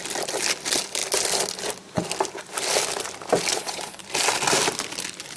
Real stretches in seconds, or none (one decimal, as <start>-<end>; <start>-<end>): 0.0-3.5; 4.0-5.4